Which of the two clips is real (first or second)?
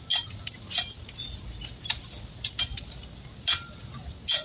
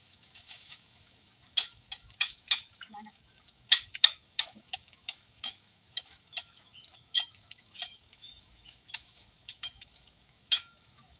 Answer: first